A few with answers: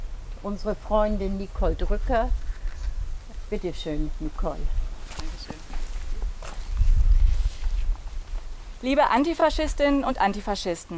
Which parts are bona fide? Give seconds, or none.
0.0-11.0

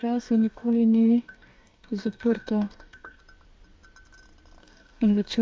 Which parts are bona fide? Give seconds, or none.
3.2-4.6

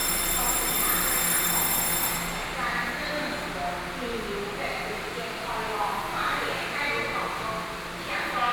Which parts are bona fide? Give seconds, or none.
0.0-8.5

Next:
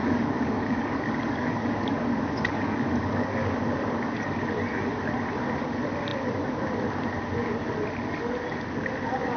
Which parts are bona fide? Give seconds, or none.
3.6-9.4

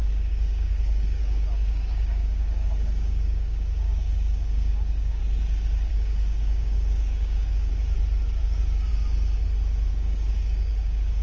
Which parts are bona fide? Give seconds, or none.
5.2-5.9; 7.7-8.4; 8.9-9.9

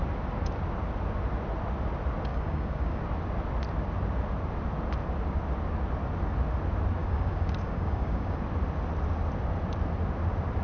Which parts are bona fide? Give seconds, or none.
0.0-2.3; 3.0-7.0; 8.4-10.6